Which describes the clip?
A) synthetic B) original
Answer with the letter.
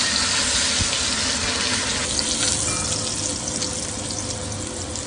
B